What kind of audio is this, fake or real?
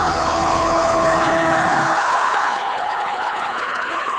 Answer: fake